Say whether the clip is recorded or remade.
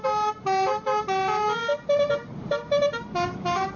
recorded